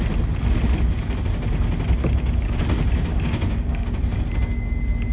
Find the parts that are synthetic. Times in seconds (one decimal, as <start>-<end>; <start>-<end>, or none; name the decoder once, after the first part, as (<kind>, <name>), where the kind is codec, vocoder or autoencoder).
2.0-2.6 (codec, DAC); 3.1-4.2